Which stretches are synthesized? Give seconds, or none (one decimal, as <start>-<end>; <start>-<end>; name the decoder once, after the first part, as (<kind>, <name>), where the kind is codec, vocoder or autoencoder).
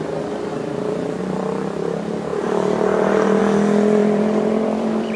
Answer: 0.5-1.2 (vocoder, BigVGAN v2); 2.3-3.4; 4.0-5.2